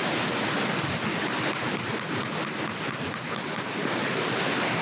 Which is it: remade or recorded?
recorded